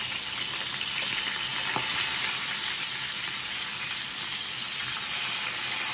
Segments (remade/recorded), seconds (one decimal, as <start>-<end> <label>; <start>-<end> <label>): 0.0-5.9 recorded